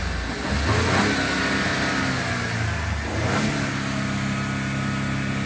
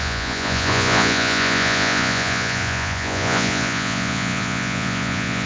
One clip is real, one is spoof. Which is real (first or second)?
first